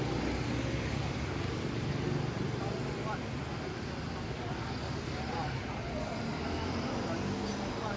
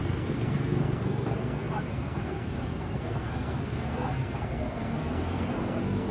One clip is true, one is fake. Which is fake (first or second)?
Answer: second